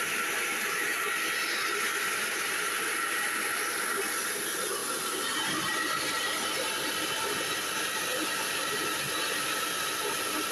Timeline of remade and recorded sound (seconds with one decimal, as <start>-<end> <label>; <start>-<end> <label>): 0.0-10.5 recorded